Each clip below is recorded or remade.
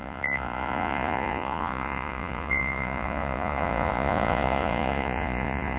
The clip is remade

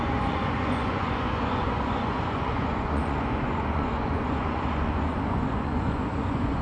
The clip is remade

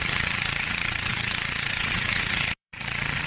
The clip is remade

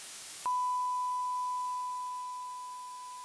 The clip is remade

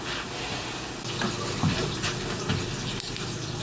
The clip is recorded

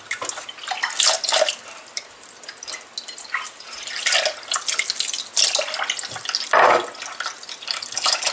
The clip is recorded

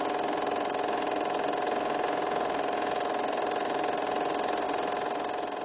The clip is recorded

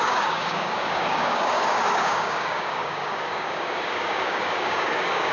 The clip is remade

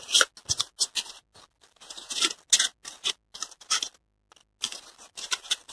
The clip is recorded